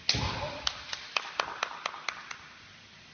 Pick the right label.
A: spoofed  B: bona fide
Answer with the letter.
B